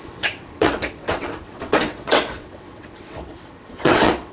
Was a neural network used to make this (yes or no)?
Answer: yes